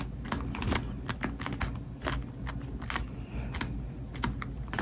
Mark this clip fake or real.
real